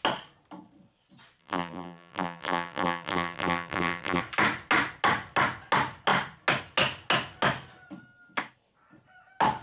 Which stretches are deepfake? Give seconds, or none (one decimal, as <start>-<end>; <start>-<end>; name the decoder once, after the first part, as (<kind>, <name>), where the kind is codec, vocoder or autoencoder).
1.4-4.2 (vocoder, BigVGAN v2)